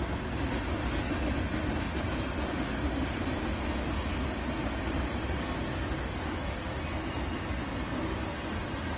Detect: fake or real real